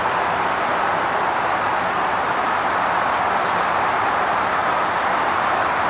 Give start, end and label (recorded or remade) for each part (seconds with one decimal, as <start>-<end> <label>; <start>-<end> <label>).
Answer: 0.0-5.9 recorded